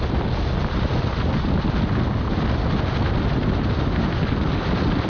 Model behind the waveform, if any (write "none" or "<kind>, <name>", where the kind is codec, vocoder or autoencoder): none